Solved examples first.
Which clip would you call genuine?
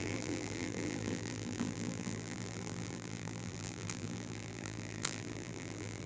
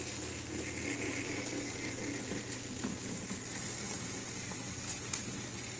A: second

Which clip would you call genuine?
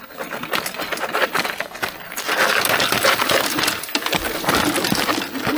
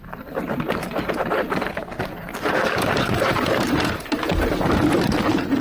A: first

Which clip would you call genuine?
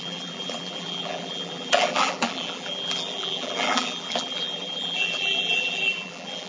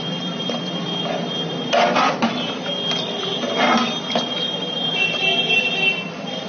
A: second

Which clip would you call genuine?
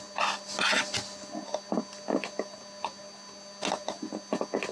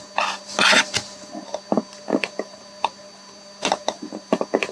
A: first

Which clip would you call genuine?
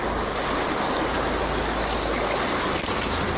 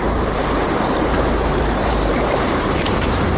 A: first